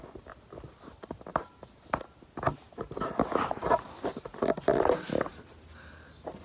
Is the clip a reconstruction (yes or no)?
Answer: no